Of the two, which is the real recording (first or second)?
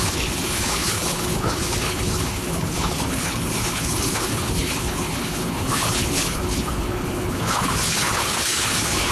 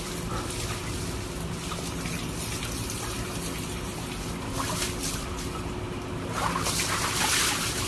second